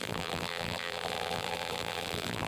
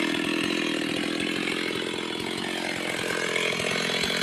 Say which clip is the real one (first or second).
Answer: second